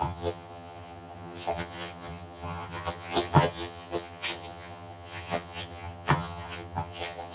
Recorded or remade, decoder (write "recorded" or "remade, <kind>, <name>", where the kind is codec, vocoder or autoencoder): remade, vocoder, HiFi-GAN